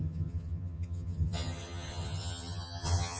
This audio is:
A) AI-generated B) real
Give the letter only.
A